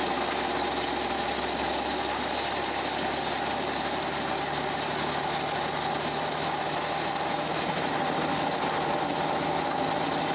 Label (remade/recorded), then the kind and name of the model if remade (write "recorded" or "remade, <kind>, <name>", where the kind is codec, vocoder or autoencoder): recorded